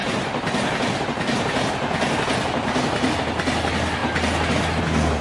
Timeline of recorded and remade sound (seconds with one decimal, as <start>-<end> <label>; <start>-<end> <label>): 0.0-5.2 recorded